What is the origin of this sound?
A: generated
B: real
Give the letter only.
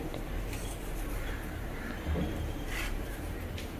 A